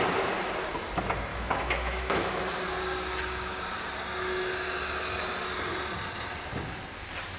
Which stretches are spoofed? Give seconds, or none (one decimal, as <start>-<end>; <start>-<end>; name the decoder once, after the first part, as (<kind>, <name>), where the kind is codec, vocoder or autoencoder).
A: 1.3-2.4 (autoencoder, DAC-VAE)